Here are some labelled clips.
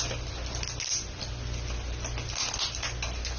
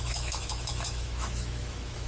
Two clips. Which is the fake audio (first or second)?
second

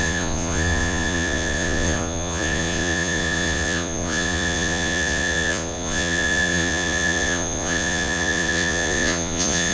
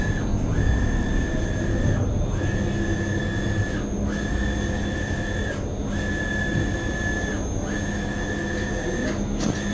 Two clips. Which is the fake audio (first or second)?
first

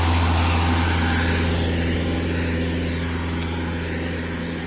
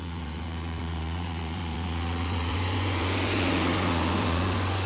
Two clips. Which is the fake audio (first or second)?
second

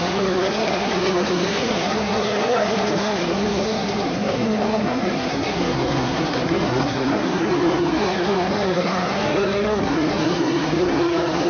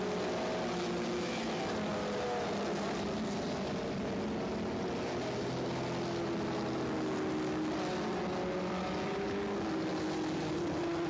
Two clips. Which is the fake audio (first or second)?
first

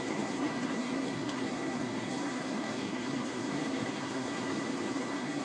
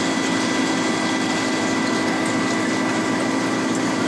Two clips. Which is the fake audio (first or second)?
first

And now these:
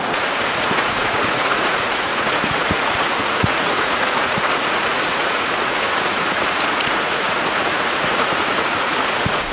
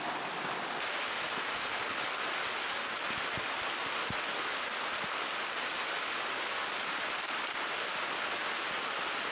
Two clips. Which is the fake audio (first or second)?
first